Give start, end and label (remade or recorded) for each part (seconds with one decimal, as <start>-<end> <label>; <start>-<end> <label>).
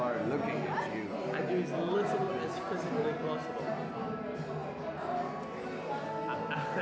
0.0-6.8 recorded